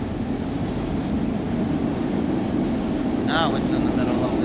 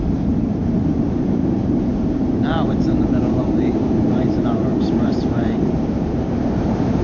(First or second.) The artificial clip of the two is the second